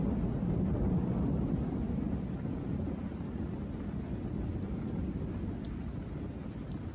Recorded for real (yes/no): yes